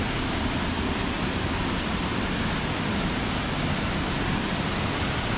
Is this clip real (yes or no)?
yes